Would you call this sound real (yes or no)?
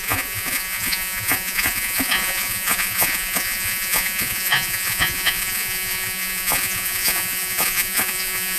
no